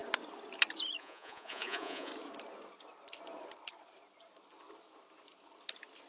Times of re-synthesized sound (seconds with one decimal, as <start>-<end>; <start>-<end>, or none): 1.0-2.1

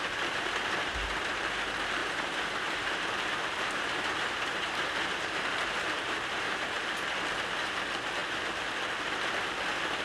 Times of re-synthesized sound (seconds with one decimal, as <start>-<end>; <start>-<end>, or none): 2.0-6.9

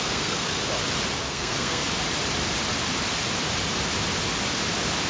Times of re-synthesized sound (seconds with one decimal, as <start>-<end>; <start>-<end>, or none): 0.0-0.7; 1.3-1.8

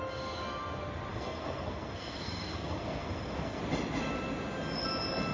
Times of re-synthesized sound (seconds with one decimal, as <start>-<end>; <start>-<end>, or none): 1.1-3.6

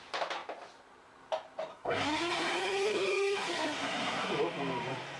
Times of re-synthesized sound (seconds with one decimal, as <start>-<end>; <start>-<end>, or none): 1.7-4.3

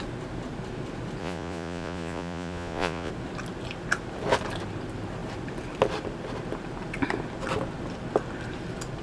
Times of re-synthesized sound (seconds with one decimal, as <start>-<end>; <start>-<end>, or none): 1.2-3.1

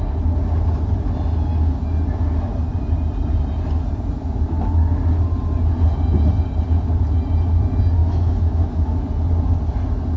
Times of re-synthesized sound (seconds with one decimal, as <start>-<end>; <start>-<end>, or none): 8.0-9.0

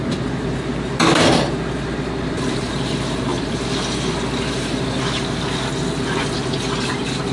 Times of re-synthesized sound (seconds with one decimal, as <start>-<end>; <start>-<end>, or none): none